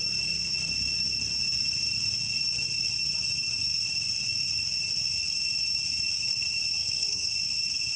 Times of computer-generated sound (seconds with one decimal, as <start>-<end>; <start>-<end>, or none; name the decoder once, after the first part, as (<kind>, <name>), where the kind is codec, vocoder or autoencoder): 6.8-7.3 (codec, SNAC)